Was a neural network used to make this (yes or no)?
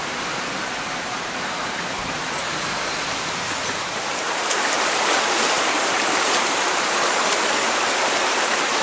yes